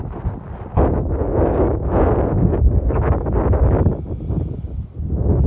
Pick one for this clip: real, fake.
real